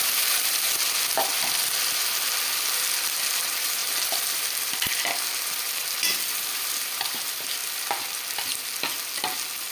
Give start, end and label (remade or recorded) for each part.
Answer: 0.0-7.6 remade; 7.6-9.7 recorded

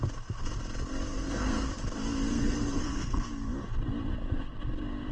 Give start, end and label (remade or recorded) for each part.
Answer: 0.0-1.1 recorded; 1.1-1.7 remade; 1.7-2.3 recorded; 2.3-3.3 remade; 3.3-5.1 recorded